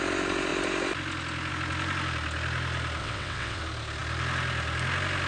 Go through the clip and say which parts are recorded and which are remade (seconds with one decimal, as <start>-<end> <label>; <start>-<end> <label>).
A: 0.0-3.0 recorded; 3.0-3.6 remade; 3.6-5.3 recorded